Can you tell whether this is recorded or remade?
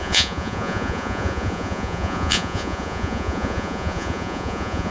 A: remade